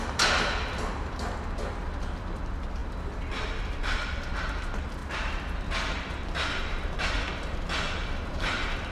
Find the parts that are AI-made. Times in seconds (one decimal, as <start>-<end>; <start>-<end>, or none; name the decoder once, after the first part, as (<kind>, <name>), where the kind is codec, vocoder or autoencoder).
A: none